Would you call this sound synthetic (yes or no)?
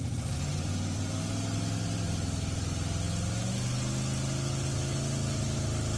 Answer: no